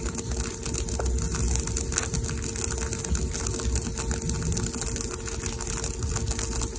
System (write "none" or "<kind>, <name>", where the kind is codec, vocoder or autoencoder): none